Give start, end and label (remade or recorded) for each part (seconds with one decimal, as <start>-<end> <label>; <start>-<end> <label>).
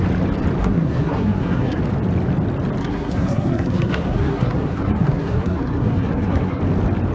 0.0-0.6 recorded; 0.6-1.8 remade; 1.8-2.8 recorded; 2.8-6.6 remade; 6.6-7.1 recorded